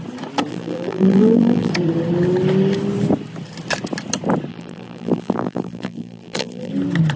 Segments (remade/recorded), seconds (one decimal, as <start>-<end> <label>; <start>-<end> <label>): 0.0-0.5 recorded; 0.5-1.7 remade; 1.7-4.5 recorded; 4.5-6.7 remade; 6.7-7.2 recorded